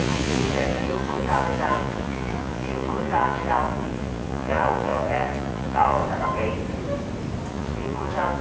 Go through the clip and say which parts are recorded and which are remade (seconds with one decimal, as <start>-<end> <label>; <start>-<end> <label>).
0.0-6.0 remade; 6.0-7.5 recorded; 7.5-8.4 remade